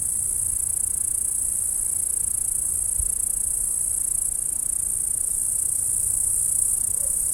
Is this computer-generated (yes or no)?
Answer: no